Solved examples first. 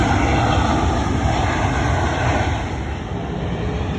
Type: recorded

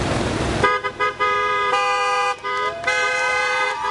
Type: remade